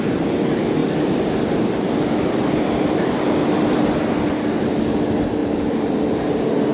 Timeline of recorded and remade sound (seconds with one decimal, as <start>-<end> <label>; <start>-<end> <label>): 0.0-5.4 recorded; 5.4-6.7 remade